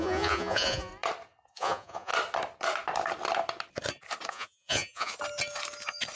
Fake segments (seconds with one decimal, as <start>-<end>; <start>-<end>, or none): 0.0-0.9; 1.5-2.1; 4.3-5.1